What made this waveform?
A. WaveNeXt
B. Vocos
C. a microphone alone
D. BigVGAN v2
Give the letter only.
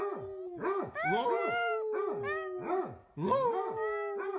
C